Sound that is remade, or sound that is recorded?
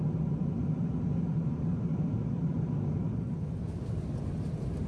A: remade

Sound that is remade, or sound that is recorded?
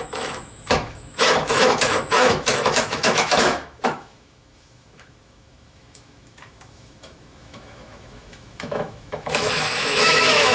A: remade